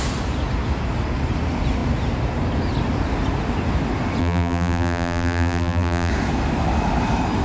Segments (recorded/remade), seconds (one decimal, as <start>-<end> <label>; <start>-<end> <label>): 0.0-4.2 recorded; 4.2-6.1 remade; 6.1-7.4 recorded